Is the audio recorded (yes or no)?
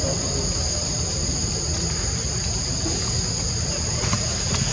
yes